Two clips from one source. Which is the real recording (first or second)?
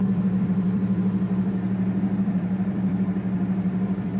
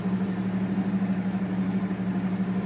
second